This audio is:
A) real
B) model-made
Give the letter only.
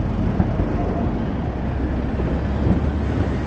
A